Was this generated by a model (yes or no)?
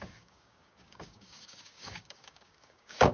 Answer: yes